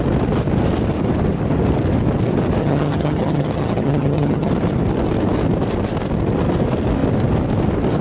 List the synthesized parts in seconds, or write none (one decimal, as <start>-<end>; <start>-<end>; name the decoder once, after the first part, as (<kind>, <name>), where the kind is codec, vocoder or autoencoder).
2.6-4.5 (vocoder, HiFi-GAN)